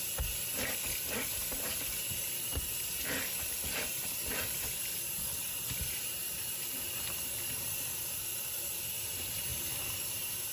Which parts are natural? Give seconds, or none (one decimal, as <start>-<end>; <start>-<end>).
0.0-6.2; 7.9-9.5